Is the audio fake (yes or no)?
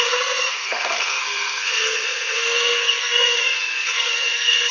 yes